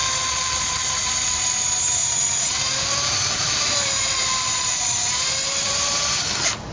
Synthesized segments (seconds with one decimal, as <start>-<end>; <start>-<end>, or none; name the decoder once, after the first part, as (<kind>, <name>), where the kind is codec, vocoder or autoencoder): 0.0-1.5 (vocoder, BigVGAN v2); 2.0-6.0